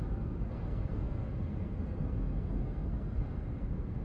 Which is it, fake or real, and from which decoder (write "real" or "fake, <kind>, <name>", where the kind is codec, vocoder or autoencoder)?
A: fake, codec, SNAC